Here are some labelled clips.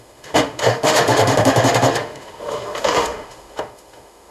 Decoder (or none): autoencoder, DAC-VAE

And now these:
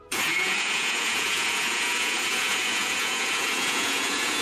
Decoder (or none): vocoder, Vocos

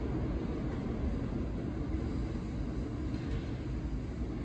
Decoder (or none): none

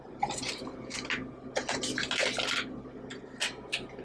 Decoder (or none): none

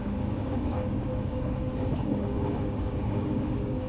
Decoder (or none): codec, DAC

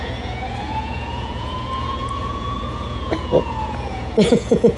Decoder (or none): vocoder, Vocos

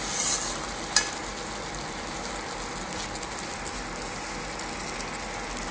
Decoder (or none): none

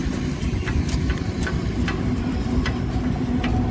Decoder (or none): none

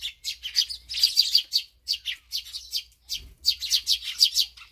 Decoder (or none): none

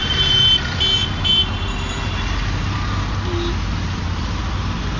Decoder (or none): none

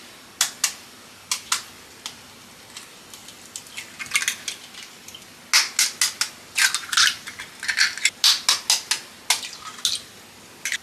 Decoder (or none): none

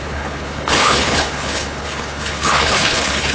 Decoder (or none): codec, HILCodec